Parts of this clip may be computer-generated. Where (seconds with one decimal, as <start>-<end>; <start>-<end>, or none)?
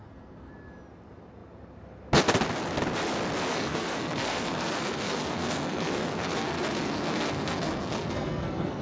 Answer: 0.0-0.5; 3.5-8.8